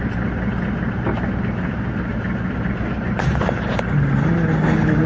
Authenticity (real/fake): real